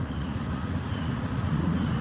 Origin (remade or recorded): remade